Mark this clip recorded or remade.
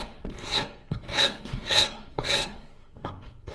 remade